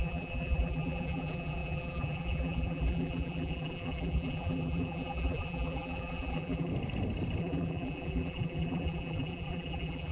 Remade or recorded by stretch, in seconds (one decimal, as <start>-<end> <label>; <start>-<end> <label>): 0.0-6.7 remade; 6.7-7.4 recorded; 7.4-10.1 remade